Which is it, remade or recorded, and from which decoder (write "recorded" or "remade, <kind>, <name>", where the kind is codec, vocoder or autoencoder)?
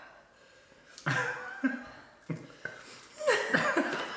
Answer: recorded